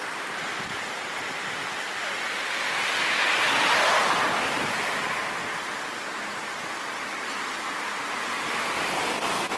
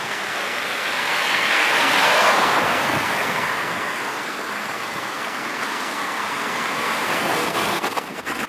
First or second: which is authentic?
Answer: first